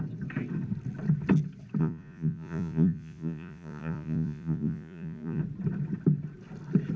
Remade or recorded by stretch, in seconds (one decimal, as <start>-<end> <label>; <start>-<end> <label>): 0.0-1.8 recorded; 1.8-5.4 remade; 5.4-7.0 recorded